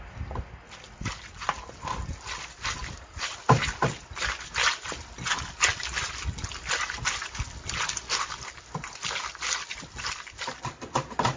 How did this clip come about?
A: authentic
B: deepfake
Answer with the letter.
A